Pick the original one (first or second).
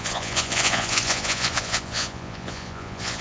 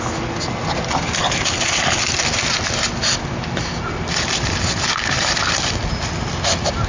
second